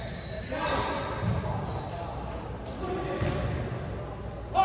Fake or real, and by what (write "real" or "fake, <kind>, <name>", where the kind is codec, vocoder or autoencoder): real